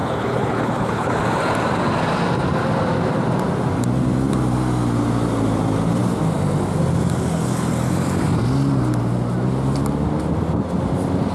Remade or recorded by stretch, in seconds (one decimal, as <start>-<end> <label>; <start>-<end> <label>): 0.0-1.2 remade; 1.2-11.3 recorded